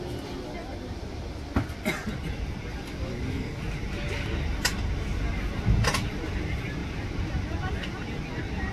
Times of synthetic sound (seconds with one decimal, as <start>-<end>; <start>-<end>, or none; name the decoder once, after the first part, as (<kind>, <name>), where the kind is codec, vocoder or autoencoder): 2.7-3.6 (codec, DAC)